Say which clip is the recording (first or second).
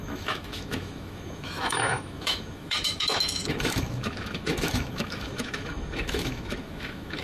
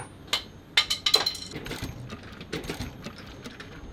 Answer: second